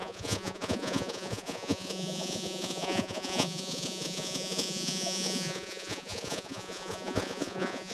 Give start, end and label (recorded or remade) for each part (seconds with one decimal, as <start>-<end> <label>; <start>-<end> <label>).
0.0-7.9 remade